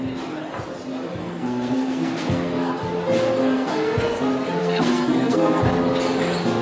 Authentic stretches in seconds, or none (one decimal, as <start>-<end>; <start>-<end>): 0.0-1.2; 2.7-3.4; 4.0-4.6; 5.6-6.6